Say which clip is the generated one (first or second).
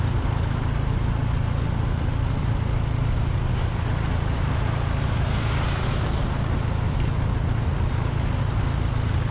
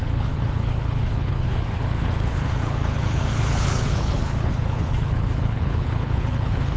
second